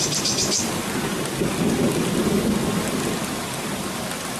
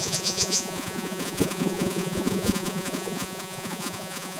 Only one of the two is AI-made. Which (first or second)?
second